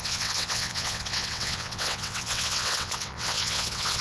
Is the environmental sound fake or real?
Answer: fake